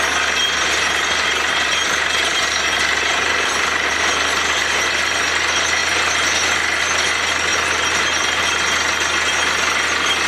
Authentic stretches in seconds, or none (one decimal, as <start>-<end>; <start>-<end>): 0.0-0.4; 4.0-7.5; 8.4-10.3